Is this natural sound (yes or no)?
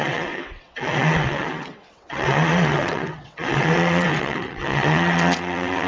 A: no